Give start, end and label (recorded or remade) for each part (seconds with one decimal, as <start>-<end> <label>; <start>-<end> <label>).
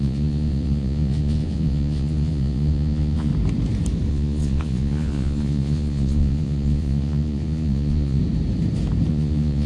0.0-3.3 remade; 3.3-4.1 recorded; 4.1-8.2 remade; 8.2-9.1 recorded; 9.1-9.7 remade